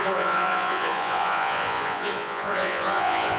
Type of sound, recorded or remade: remade